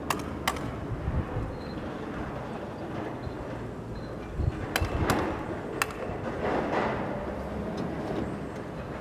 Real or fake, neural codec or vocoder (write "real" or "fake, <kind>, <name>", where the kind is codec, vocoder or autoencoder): real